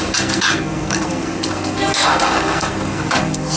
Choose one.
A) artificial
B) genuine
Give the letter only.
A